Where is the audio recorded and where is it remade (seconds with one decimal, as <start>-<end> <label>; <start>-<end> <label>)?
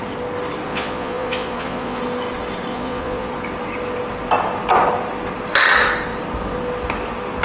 0.0-0.7 recorded; 0.7-2.0 remade; 2.0-2.7 recorded; 2.7-3.3 remade; 3.3-7.4 recorded